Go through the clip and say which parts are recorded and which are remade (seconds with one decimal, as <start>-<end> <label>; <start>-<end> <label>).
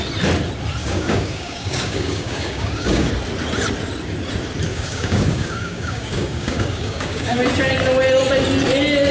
0.0-0.8 recorded; 0.8-3.1 remade; 3.1-4.7 recorded; 4.7-7.4 remade; 7.4-9.1 recorded